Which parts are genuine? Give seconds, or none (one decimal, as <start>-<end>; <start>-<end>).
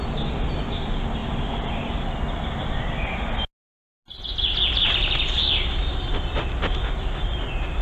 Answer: 0.0-1.2; 1.9-7.8